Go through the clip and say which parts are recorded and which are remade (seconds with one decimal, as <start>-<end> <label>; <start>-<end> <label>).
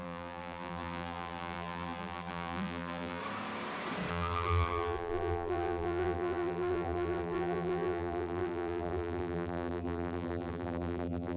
0.0-3.2 remade; 3.2-4.1 recorded; 4.1-11.4 remade